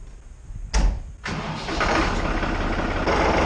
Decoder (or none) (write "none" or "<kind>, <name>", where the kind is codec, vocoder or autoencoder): none